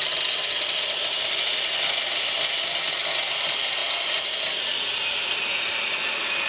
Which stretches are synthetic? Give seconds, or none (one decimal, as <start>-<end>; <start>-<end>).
none